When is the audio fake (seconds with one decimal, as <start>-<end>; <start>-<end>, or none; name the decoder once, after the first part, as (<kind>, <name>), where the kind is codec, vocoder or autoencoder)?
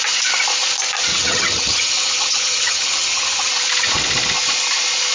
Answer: 1.1-3.5 (vocoder, HiFi-GAN)